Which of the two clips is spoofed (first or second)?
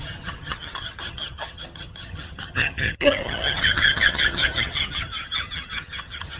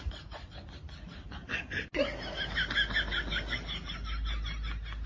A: first